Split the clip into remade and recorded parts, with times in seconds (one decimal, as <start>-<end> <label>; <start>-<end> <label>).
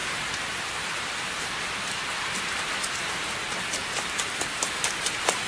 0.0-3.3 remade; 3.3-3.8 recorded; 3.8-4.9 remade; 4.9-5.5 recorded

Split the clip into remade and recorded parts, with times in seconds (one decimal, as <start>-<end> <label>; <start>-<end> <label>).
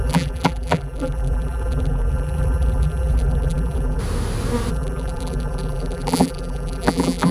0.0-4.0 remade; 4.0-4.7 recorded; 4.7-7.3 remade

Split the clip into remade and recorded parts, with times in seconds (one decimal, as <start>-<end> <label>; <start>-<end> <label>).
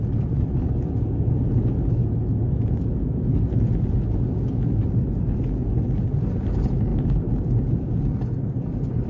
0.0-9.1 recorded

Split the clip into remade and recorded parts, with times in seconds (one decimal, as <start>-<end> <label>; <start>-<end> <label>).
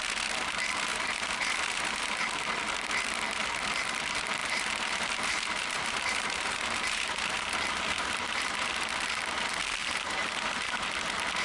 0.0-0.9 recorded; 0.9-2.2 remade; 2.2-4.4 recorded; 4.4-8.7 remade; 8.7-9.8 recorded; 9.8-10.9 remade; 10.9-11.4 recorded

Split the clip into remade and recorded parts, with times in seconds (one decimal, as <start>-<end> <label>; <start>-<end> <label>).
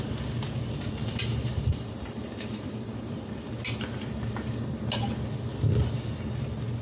0.0-1.0 recorded; 1.0-3.5 remade; 3.5-6.8 recorded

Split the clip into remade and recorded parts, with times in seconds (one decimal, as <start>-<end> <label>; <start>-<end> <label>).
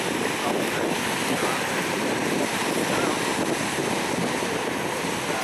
0.0-5.4 recorded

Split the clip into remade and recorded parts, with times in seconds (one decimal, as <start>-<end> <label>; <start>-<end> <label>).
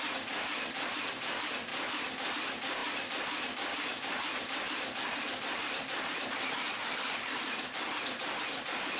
0.0-1.7 remade; 1.7-2.3 recorded; 2.3-9.0 remade